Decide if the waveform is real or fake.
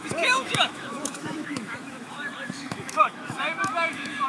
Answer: fake